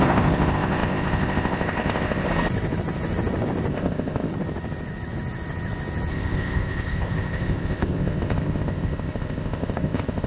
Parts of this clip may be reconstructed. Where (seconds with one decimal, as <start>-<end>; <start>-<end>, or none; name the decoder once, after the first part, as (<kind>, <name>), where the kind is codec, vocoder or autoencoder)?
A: 0.0-2.3 (codec, ZipCodec); 3.7-4.3; 6.1-10.3